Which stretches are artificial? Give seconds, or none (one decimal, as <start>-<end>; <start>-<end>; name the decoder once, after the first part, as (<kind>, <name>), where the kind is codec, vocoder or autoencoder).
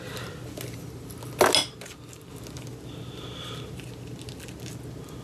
none